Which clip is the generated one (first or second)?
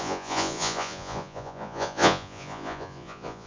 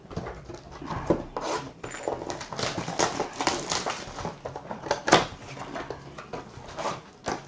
first